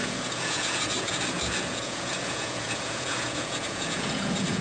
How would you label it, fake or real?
fake